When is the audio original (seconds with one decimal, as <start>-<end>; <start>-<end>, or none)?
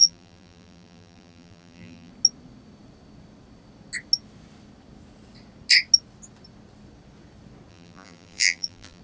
2.1-7.7